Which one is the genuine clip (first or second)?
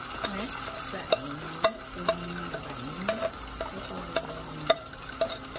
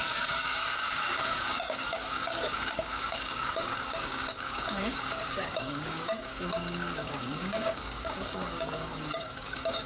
first